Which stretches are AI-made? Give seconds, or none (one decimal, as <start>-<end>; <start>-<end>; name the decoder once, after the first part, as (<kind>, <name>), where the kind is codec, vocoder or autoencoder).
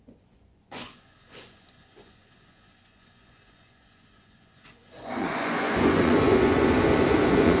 0.0-7.6 (vocoder, Vocos)